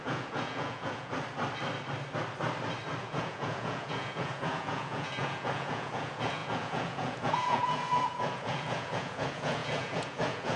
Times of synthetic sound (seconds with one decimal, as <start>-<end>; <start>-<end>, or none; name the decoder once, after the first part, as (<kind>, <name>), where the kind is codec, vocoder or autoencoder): 0.0-1.1 (vocoder, Vocos); 3.0-10.6